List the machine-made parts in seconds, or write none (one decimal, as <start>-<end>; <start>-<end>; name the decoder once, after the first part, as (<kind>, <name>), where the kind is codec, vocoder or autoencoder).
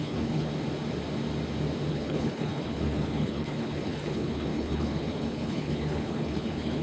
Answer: 0.0-0.5 (codec, HILCodec); 1.9-6.8